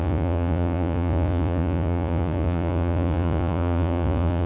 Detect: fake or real fake